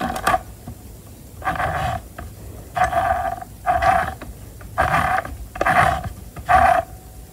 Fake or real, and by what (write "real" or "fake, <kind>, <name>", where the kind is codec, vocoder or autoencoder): real